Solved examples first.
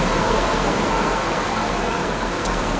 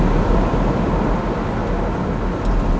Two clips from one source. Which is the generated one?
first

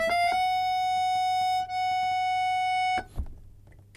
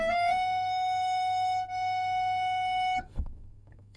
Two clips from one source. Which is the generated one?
second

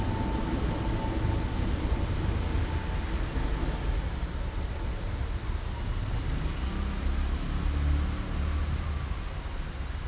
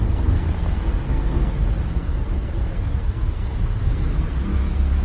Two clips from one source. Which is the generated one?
second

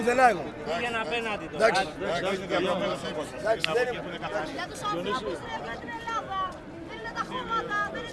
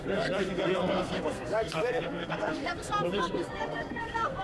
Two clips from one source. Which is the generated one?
second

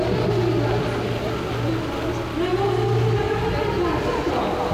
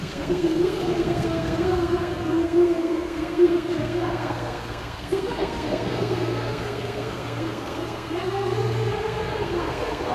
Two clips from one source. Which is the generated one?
second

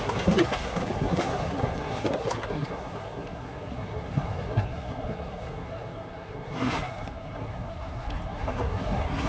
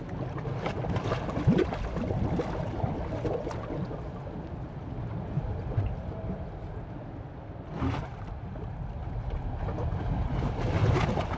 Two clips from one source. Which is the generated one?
first